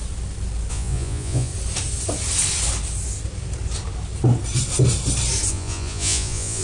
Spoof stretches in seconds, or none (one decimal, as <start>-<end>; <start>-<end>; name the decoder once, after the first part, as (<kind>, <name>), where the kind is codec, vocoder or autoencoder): 0.7-1.5 (vocoder, Vocos); 5.5-6.6